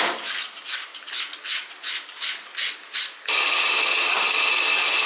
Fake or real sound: real